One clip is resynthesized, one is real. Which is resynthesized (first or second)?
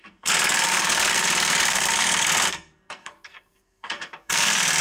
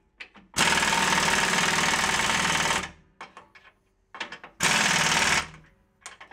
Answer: first